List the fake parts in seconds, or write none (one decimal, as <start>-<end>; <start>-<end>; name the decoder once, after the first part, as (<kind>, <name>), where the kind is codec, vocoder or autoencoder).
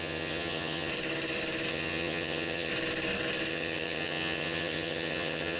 0.0-0.9 (vocoder, HiFi-GAN); 1.7-2.7; 3.5-5.6